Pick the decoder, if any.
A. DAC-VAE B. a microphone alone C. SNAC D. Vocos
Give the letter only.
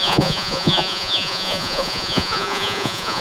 D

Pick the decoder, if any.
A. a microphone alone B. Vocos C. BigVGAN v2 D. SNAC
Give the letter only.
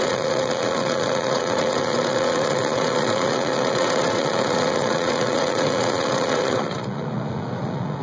B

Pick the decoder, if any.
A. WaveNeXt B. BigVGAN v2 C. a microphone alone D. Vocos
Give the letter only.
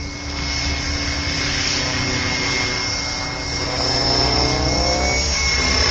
C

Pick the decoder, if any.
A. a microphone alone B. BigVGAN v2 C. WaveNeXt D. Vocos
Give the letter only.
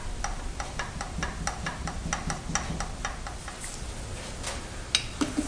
A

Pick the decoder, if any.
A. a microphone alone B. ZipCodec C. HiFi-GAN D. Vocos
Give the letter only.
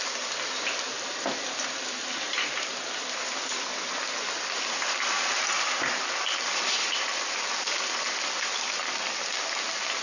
A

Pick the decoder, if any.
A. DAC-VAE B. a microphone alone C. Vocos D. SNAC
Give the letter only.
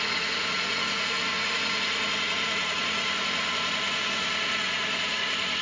C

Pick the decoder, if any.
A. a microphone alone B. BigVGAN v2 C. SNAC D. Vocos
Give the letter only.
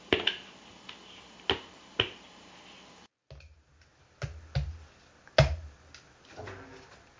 A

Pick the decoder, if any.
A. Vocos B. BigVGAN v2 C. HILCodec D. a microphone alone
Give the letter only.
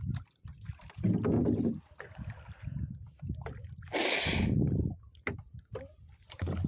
D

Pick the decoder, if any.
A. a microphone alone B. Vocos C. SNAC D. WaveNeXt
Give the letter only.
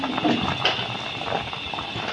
A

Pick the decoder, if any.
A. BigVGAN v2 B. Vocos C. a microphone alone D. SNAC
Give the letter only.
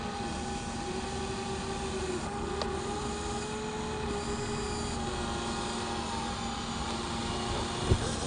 C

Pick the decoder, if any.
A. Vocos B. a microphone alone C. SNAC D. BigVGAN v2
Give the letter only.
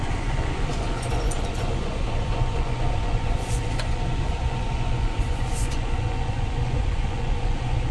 A